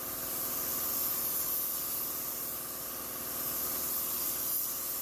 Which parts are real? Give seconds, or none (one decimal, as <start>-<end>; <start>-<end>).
0.7-5.0